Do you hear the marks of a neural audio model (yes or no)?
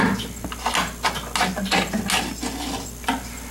no